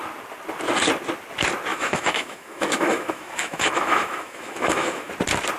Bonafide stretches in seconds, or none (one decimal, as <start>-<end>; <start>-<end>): 0.0-1.7; 5.1-5.6

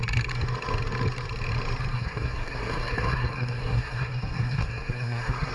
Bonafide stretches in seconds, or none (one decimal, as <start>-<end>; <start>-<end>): 0.0-1.9

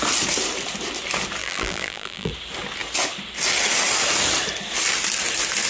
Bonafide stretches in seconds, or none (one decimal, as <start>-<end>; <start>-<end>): 0.0-1.4; 2.3-5.7

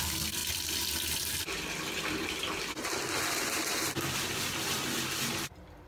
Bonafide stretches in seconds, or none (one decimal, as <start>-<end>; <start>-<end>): 0.0-5.9

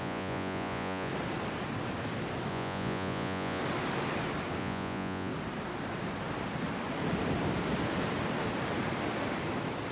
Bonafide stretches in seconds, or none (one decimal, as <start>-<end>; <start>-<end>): 1.1-2.5; 3.6-4.6; 5.3-9.9

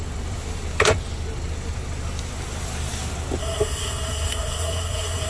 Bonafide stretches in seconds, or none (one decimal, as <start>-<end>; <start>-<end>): 0.0-3.4